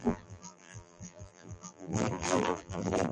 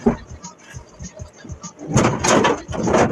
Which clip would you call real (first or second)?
second